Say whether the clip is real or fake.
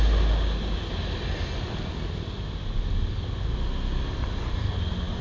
real